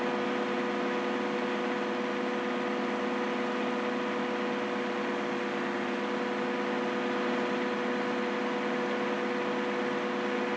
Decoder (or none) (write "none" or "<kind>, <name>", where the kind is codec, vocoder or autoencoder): none